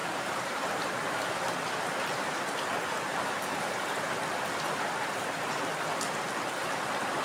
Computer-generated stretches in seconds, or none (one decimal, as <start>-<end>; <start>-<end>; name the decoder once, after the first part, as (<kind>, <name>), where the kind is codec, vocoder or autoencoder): 0.0-1.4 (vocoder, BigVGAN v2); 3.1-4.1